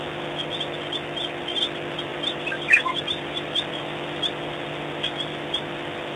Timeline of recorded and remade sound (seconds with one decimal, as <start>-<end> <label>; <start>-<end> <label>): 0.0-2.1 recorded; 2.1-3.7 remade; 3.7-6.2 recorded